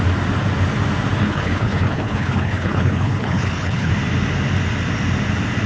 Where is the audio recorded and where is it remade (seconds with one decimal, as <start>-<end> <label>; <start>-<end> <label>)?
0.0-1.2 recorded; 1.2-3.9 remade; 3.9-5.7 recorded